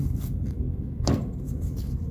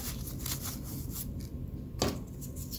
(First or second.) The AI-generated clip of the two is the first